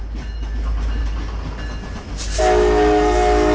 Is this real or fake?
real